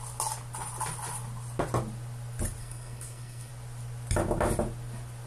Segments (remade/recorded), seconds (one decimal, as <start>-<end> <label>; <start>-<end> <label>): 0.0-2.6 recorded; 2.6-3.5 remade; 3.5-5.3 recorded